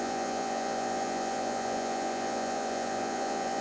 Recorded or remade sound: remade